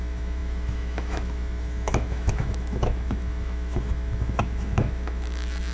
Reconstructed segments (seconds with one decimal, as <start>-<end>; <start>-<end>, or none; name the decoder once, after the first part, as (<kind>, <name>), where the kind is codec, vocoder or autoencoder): 0.0-5.7 (autoencoder, DAC-VAE)